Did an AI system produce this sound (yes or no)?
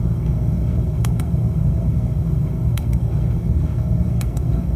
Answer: yes